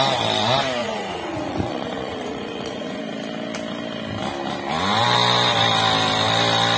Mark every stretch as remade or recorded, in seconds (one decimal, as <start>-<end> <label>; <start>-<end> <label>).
0.0-0.8 recorded; 0.8-3.0 remade; 3.0-6.8 recorded